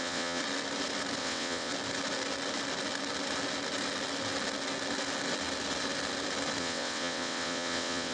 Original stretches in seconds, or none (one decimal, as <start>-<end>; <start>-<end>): 0.4-1.2; 1.7-6.6